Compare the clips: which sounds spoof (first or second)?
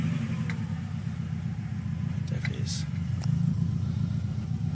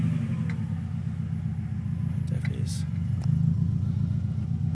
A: first